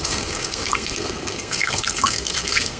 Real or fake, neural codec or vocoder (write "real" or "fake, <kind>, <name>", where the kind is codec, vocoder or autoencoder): fake, codec, SNAC